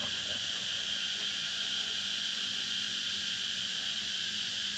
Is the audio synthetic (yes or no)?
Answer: yes